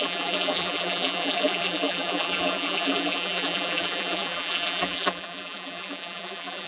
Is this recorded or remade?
remade